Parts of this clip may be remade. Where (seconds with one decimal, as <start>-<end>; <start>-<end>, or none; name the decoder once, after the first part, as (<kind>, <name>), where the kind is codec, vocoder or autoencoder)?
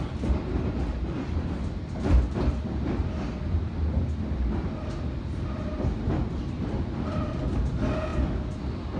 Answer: none